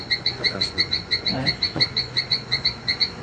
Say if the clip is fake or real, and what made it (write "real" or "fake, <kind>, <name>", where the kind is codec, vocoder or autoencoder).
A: fake, vocoder, Vocos